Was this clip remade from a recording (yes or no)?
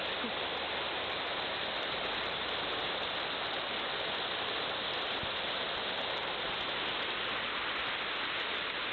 no